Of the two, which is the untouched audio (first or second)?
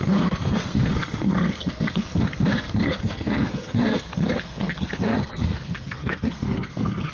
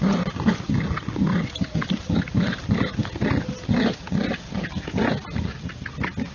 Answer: second